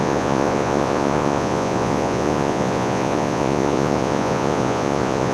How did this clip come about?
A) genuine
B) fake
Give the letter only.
B